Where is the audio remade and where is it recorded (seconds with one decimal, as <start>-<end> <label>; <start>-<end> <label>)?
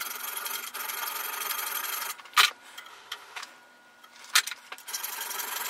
0.0-2.9 recorded; 2.9-3.4 remade; 3.4-5.7 recorded